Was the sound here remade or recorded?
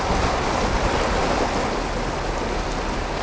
recorded